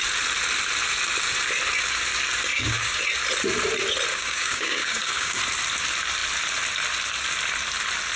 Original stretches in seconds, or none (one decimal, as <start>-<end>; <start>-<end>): 0.0-2.5; 3.0-4.1; 5.4-8.2